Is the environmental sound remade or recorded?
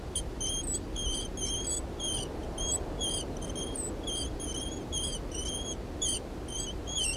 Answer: recorded